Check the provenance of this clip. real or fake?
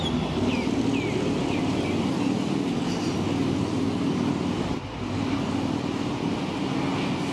real